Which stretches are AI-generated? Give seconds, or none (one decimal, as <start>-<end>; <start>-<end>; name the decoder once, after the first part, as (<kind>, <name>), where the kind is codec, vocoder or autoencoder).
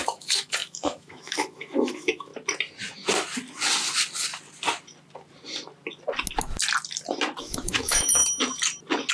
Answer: 0.0-2.3 (autoencoder, DAC-VAE); 7.4-8.2